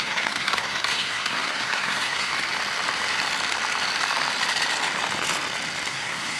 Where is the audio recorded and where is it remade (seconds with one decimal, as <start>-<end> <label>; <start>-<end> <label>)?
0.0-2.3 remade; 2.3-5.9 recorded; 5.9-6.4 remade